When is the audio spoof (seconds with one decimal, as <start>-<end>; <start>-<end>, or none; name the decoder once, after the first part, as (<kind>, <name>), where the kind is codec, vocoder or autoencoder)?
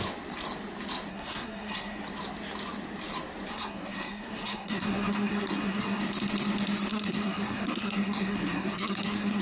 1.1-2.0 (codec, SNAC); 3.5-6.0; 6.9-9.4